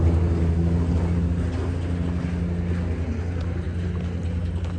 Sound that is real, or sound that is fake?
real